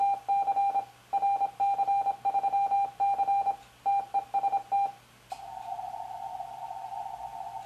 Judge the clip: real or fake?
real